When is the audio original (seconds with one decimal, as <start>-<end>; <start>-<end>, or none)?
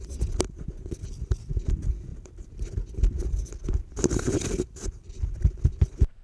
0.0-6.2